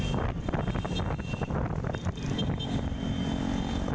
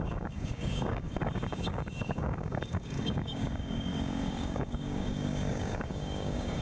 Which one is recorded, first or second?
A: first